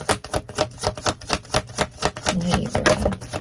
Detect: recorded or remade recorded